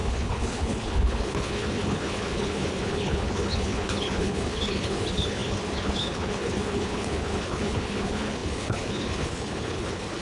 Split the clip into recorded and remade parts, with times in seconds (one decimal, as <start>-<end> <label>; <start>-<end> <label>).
0.0-10.2 remade